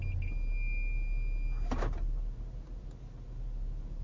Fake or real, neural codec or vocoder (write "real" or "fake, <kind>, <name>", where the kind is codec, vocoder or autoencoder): real